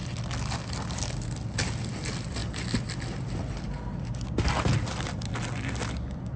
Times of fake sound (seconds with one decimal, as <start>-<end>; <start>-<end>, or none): none